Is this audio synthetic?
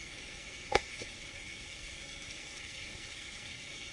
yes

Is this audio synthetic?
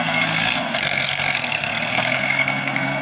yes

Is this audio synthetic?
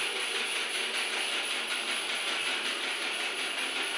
no